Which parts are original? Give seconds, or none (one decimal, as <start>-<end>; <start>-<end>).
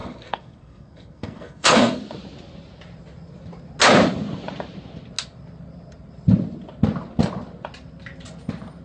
2.0-8.8